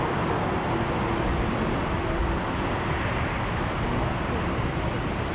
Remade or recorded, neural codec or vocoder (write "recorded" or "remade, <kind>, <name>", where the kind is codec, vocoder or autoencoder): recorded